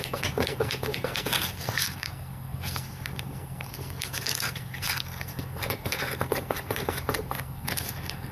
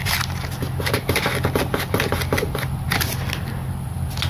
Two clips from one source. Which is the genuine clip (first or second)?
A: second